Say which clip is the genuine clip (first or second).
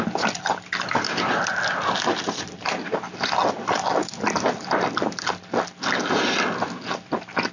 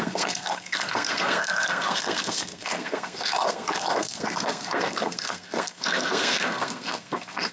first